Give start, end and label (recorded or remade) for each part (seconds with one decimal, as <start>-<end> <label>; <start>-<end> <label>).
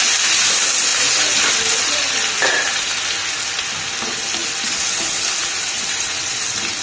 0.0-6.8 recorded